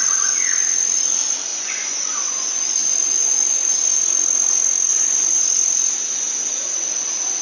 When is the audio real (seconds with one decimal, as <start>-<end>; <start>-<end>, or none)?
0.0-1.5; 4.0-4.9; 5.4-7.4